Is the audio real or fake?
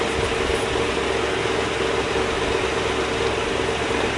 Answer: real